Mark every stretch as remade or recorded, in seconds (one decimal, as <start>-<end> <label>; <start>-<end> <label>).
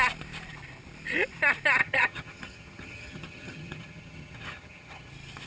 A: 0.0-1.8 recorded; 1.8-5.1 remade; 5.1-5.5 recorded